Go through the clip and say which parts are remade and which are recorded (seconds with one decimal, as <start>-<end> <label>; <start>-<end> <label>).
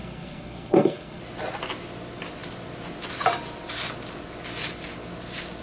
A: 0.0-1.2 remade; 1.2-5.6 recorded